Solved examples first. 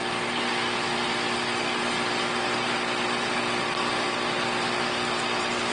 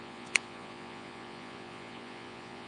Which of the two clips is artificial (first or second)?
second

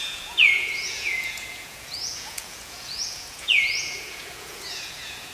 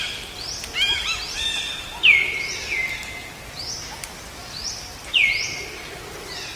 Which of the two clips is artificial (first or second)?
first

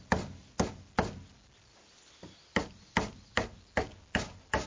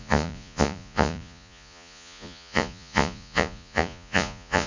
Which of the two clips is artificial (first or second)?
second